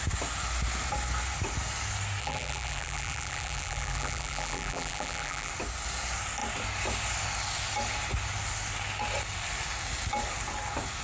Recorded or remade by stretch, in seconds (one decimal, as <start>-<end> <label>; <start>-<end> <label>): 0.0-2.2 recorded; 2.2-5.5 remade; 5.5-11.0 recorded